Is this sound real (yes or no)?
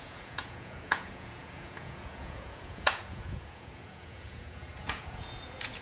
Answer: no